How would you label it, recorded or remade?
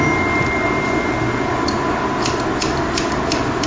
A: recorded